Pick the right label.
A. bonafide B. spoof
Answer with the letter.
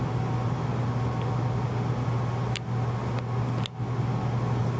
A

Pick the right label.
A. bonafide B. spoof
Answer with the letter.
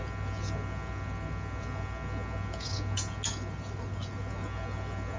A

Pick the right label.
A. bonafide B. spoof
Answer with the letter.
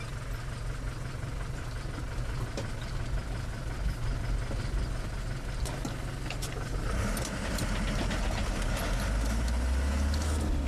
A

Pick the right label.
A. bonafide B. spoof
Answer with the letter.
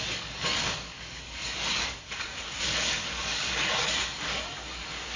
B